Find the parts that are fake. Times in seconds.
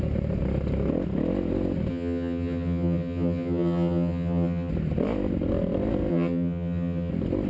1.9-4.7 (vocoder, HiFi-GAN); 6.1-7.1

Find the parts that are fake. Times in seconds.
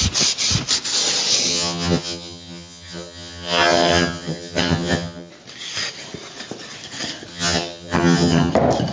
1.5-5.3 (vocoder, HiFi-GAN); 7.3-8.5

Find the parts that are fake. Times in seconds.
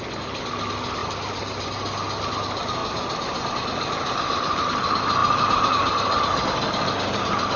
none